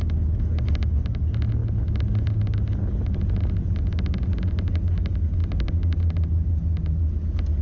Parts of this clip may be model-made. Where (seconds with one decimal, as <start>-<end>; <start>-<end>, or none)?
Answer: none

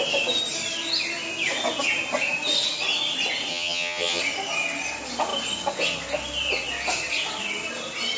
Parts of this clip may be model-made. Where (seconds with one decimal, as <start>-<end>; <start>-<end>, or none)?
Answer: 3.5-4.2

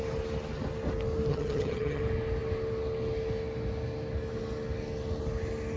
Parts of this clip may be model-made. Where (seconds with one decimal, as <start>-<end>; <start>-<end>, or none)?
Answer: 1.3-2.0

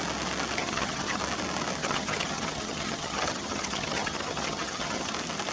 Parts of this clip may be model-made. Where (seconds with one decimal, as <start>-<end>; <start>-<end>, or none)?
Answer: 0.6-1.2; 1.8-5.1

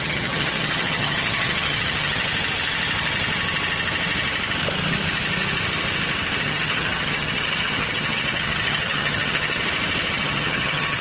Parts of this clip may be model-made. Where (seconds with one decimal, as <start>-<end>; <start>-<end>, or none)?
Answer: 0.0-2.3; 6.4-9.6; 10.1-11.0